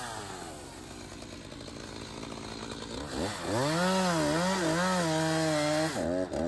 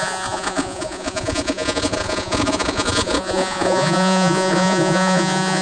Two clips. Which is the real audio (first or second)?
first